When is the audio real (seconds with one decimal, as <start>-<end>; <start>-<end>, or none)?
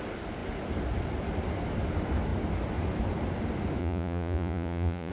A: 0.0-3.8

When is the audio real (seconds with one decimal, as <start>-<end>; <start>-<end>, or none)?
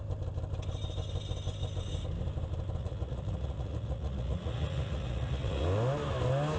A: 0.0-2.8; 5.6-6.6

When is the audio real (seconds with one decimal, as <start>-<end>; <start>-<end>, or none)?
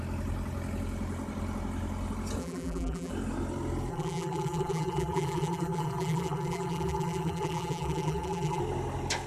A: 0.0-2.4; 3.1-3.9; 8.6-9.3